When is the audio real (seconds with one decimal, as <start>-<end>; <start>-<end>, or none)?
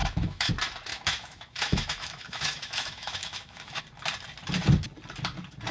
0.5-0.9; 3.8-5.7